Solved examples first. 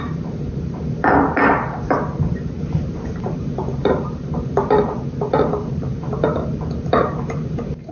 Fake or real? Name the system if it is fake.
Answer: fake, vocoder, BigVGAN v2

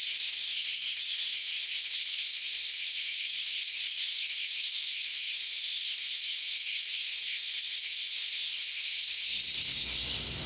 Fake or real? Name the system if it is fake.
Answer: fake, codec, SNAC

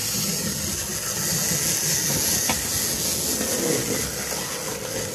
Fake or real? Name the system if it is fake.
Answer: real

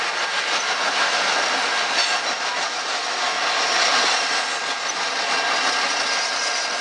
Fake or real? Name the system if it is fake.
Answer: real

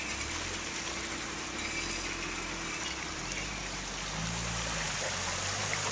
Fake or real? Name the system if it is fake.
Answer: real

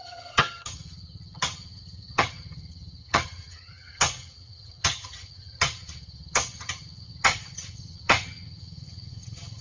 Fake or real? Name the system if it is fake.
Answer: fake, vocoder, HiFi-GAN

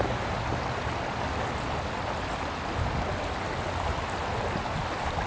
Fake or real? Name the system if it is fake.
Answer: real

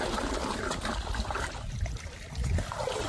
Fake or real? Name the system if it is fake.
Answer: real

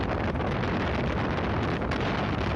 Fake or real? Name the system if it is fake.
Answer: real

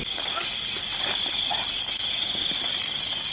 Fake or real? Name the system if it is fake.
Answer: real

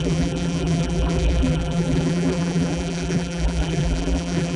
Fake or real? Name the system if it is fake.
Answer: fake, vocoder, BigVGAN v2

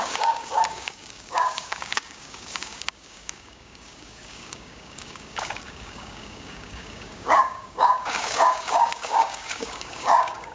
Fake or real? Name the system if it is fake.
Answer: fake, codec, DAC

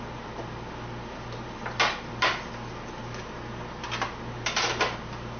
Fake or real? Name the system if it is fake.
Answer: real